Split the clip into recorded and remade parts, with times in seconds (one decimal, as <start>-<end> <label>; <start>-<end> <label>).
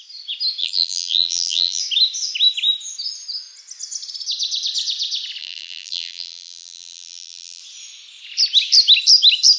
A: 0.0-0.6 recorded; 0.6-1.8 remade; 1.8-5.4 recorded; 5.4-7.6 remade; 7.6-9.6 recorded